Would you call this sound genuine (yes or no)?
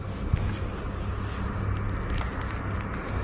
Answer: yes